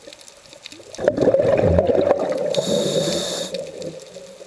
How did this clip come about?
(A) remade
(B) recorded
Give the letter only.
B